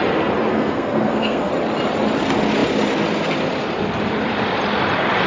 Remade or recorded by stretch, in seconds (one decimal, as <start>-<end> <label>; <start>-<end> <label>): 0.0-0.5 recorded; 0.5-1.5 remade; 1.5-5.3 recorded